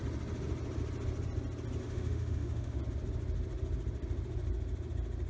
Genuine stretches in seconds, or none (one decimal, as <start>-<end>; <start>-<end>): 0.0-1.8; 2.8-5.3